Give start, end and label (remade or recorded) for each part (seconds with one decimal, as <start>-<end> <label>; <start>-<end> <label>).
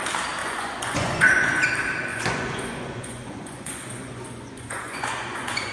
0.0-0.4 recorded; 0.4-1.6 remade; 1.6-2.1 recorded; 2.1-5.7 remade